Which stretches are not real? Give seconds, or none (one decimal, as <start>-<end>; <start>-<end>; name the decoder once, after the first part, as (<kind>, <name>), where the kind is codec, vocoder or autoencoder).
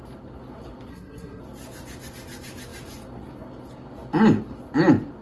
0.9-1.4 (codec, SNAC)